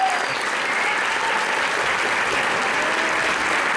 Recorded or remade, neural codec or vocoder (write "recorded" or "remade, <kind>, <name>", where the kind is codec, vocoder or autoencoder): recorded